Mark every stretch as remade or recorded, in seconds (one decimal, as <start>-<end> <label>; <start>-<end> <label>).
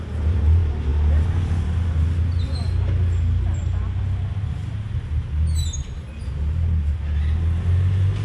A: 0.0-8.2 recorded